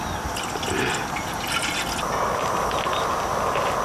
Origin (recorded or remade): recorded